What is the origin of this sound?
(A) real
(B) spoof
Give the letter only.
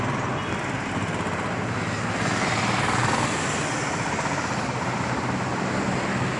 A